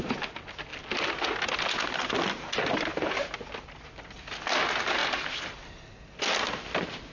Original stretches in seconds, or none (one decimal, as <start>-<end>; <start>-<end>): 0.0-7.1